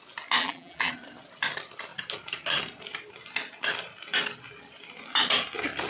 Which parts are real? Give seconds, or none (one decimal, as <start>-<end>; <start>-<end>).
0.0-0.4; 0.9-5.9